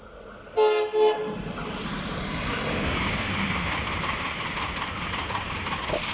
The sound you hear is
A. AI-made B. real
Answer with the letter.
B